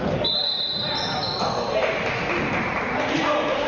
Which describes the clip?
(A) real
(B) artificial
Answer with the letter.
A